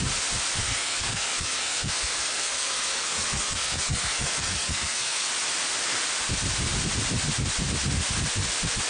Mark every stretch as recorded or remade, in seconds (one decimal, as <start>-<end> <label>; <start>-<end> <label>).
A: 0.0-0.6 recorded; 0.6-5.3 remade; 5.3-8.9 recorded